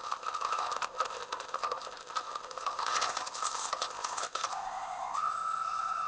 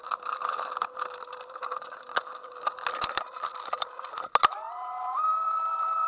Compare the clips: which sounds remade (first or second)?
first